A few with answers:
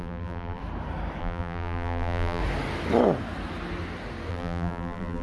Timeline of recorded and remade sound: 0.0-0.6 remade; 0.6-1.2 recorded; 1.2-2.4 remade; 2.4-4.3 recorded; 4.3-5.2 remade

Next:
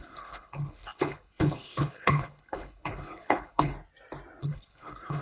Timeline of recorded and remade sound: 0.0-3.7 remade; 3.7-4.4 recorded; 4.4-5.2 remade